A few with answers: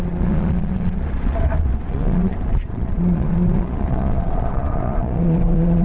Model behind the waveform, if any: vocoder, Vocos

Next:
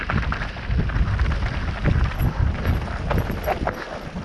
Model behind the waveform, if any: none